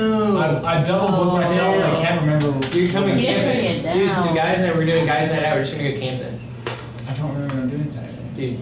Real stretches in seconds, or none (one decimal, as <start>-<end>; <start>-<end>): 0.0-6.5; 7.2-8.6